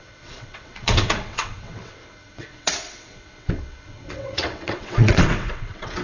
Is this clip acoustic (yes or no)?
no